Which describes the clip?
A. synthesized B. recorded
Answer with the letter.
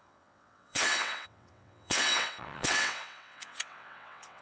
A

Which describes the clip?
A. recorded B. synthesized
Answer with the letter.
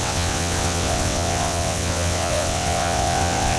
B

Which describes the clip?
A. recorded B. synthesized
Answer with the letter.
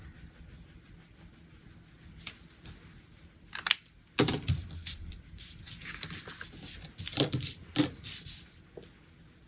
A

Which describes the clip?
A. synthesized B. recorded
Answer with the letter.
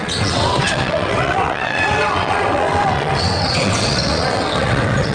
A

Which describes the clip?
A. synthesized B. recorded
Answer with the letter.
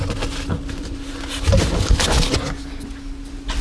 B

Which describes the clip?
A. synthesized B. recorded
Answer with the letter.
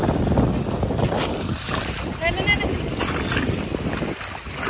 B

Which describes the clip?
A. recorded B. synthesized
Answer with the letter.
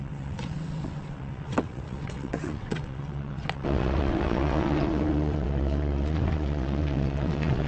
B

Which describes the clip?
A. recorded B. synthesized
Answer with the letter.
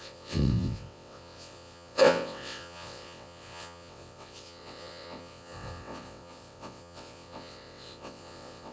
B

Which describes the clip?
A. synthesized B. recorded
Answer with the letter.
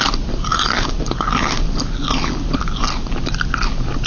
B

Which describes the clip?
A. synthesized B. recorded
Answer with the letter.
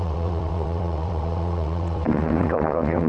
A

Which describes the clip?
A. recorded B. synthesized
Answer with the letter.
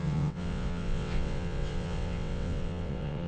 B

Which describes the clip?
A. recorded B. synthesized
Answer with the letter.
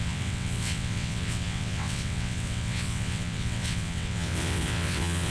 B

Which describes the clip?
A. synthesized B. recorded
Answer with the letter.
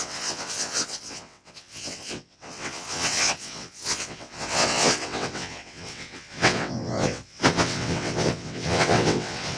A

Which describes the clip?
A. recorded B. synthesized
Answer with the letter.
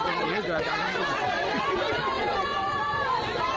B